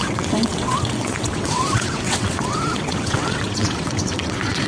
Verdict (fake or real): fake